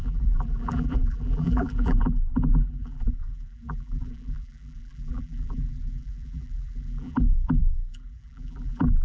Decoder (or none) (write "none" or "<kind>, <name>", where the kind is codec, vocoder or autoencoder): vocoder, BigVGAN v2